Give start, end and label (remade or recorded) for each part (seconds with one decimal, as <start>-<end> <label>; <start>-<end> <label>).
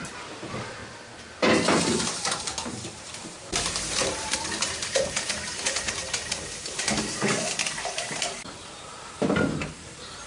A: 0.0-0.8 remade; 0.8-2.4 recorded; 2.4-6.0 remade; 6.0-7.8 recorded; 7.8-10.3 remade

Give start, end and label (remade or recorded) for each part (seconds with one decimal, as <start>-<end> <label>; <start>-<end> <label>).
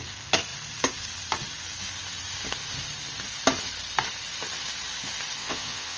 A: 0.0-5.4 recorded; 5.4-6.0 remade